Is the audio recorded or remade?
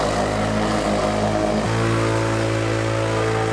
recorded